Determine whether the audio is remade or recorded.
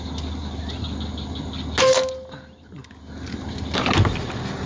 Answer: recorded